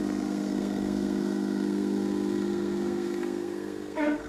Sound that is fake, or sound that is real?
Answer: fake